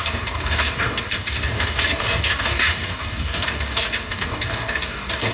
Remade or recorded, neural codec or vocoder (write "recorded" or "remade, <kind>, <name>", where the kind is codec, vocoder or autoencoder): remade, codec, DAC